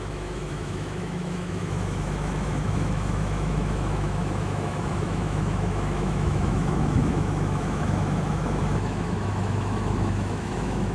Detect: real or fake fake